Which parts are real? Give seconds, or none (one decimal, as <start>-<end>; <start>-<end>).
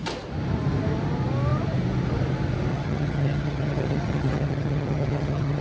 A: 0.0-2.7